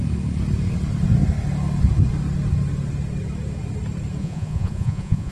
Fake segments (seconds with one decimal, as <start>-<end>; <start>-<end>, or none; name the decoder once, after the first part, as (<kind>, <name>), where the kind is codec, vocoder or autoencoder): 4.2-5.3 (vocoder, Vocos)